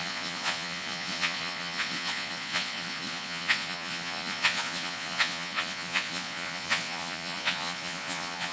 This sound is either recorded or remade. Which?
remade